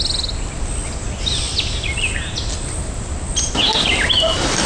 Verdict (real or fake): real